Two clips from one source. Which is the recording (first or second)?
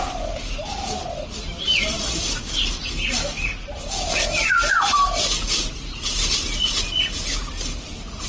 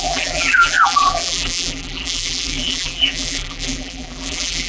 first